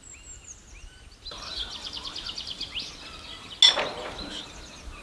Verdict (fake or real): real